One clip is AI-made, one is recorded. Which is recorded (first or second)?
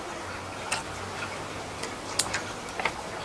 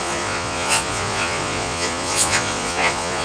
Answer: first